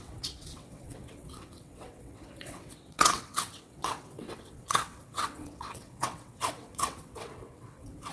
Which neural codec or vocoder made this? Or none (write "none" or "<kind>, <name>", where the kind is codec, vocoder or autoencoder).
vocoder, WaveNeXt